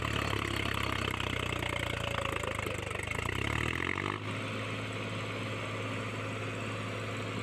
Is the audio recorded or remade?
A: recorded